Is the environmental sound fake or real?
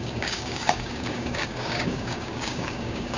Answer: fake